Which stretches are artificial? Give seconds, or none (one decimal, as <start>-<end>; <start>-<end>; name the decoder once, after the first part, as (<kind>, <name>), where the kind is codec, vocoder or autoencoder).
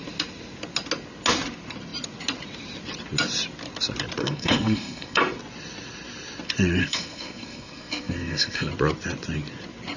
4.2-5.2 (codec, SNAC); 6.8-8.7